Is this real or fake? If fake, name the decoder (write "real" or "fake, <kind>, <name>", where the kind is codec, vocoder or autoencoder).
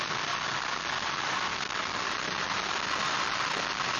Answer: real